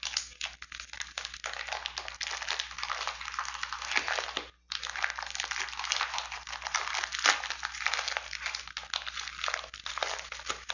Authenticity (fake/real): real